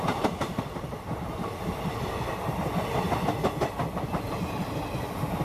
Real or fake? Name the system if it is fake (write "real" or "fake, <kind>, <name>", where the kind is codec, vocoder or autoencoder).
real